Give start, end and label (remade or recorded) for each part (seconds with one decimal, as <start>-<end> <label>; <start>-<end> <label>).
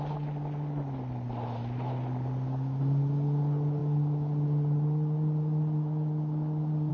0.0-6.9 recorded